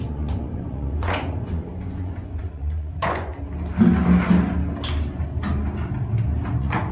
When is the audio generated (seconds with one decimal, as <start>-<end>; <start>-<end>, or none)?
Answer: 0.0-3.3; 6.5-6.9